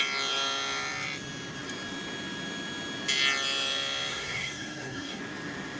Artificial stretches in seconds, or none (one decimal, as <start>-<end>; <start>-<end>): 4.1-5.2